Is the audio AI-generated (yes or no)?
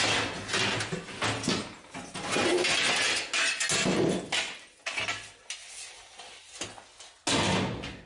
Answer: no